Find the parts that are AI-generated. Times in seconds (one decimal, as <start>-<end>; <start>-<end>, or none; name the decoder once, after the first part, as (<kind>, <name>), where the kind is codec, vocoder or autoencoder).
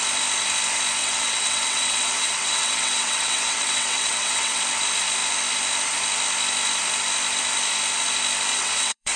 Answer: 1.0-4.6 (vocoder, WaveNeXt); 8.5-9.2